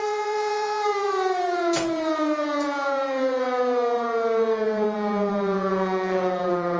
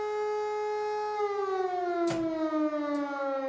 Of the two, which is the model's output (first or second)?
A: first